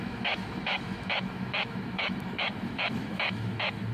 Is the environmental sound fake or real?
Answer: fake